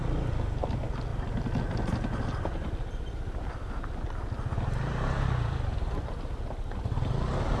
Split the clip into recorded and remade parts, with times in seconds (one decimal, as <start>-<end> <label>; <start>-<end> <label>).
0.0-7.6 recorded